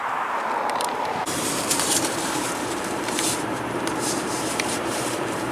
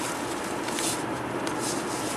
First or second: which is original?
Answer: second